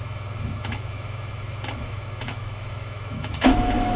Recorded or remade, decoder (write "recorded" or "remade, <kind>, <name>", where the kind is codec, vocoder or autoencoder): remade, autoencoder, DAC-VAE